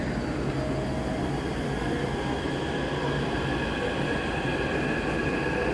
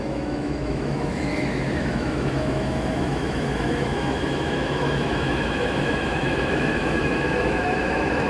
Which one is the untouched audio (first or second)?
first